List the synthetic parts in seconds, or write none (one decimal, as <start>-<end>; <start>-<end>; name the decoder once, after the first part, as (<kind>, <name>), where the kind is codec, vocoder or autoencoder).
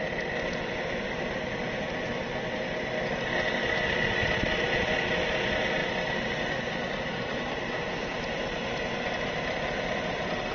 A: none